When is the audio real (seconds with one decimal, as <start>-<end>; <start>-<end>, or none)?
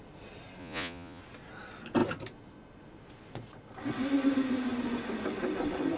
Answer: 0.0-0.6; 1.2-6.0